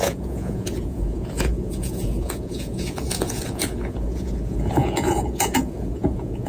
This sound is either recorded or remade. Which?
remade